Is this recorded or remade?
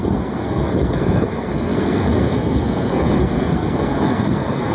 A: remade